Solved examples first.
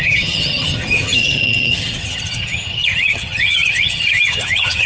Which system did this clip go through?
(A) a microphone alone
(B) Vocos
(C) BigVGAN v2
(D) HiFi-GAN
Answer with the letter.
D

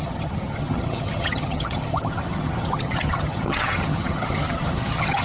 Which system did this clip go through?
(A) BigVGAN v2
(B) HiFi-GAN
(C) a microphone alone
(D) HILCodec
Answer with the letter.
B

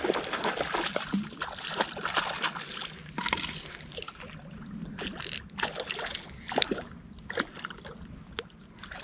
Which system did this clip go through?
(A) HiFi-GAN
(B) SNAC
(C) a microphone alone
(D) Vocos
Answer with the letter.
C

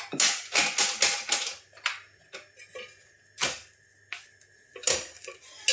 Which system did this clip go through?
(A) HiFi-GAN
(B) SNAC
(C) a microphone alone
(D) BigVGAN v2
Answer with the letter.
C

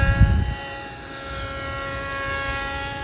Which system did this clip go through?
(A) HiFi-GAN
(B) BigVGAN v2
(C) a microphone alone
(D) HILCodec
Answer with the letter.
C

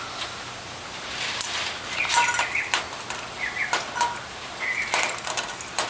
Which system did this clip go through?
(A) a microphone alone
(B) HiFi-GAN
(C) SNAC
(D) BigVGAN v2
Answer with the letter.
A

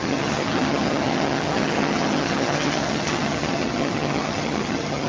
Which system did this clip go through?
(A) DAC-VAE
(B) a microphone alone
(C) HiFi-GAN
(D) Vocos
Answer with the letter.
C